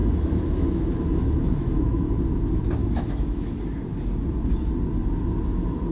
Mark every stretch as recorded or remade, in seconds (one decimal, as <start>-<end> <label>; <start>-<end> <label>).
0.0-2.2 remade; 2.2-2.8 recorded; 2.8-3.5 remade; 3.5-5.9 recorded